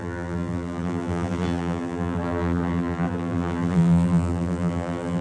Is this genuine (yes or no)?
no